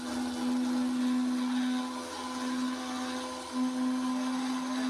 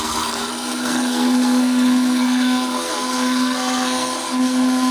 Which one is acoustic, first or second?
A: first